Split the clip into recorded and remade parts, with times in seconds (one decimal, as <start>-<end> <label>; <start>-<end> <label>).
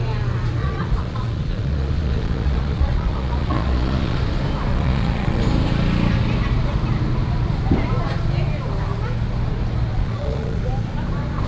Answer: 0.0-0.6 recorded; 0.6-4.2 remade; 4.2-4.7 recorded; 4.7-5.4 remade; 5.4-9.9 recorded; 9.9-10.6 remade; 10.6-11.5 recorded